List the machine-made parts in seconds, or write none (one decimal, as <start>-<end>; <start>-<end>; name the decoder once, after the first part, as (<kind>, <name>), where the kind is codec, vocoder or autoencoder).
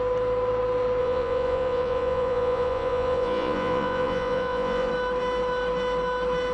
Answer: 1.0-4.9 (vocoder, Vocos)